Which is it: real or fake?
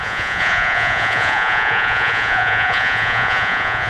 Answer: fake